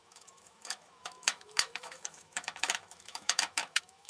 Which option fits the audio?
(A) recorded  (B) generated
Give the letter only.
B